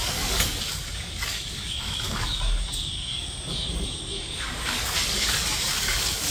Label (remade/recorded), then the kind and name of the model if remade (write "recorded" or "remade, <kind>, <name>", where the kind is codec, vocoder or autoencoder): remade, codec, DAC